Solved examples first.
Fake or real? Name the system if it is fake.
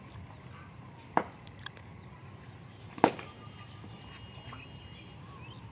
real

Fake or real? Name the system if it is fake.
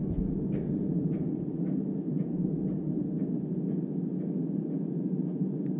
real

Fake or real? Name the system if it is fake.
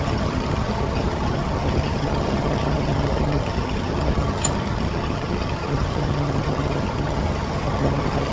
fake, vocoder, HiFi-GAN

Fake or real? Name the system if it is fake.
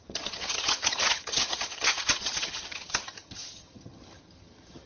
fake, vocoder, HiFi-GAN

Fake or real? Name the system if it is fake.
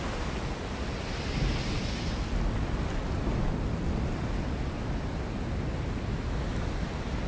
real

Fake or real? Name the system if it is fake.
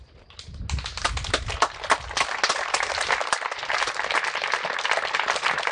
real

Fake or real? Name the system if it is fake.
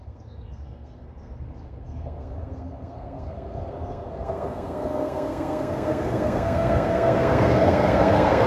fake, codec, SNAC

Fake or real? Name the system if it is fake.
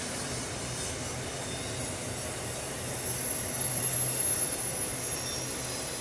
real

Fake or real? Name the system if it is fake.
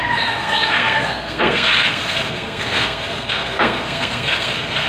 fake, codec, SNAC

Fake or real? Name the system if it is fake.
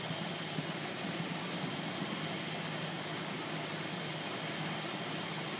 real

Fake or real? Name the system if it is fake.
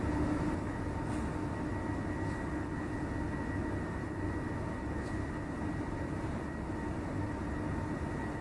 real